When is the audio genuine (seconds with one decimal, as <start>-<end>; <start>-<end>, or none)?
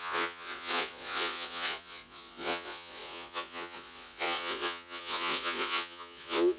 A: none